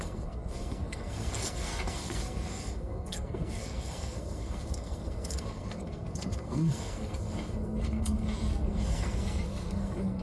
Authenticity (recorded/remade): remade